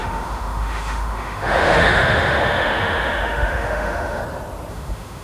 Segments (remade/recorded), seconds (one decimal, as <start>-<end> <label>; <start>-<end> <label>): 0.0-4.2 remade; 4.2-4.7 recorded; 4.7-5.2 remade